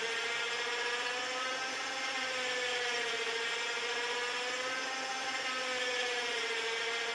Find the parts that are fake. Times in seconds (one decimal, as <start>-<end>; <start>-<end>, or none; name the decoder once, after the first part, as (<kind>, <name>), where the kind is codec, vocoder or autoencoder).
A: none